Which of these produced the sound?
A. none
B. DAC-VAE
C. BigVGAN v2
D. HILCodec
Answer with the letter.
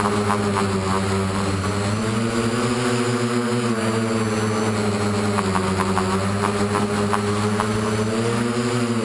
A